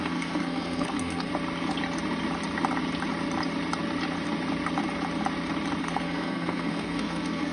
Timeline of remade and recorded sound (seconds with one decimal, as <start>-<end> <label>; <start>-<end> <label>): 0.0-1.3 remade; 1.3-5.8 recorded; 5.8-7.5 remade